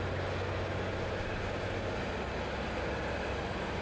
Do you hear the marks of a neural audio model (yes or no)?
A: no